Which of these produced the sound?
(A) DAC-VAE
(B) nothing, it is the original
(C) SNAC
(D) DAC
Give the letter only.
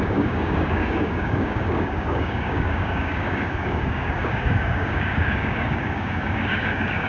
D